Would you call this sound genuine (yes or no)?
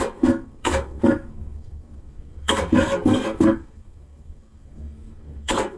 no